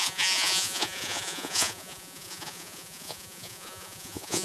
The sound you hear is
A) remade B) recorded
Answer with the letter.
A